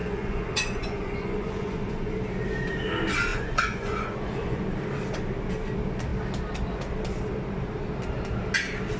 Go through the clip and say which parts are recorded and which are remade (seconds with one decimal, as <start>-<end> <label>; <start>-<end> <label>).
0.0-2.1 remade; 2.1-3.3 recorded; 3.3-4.6 remade; 4.6-9.0 recorded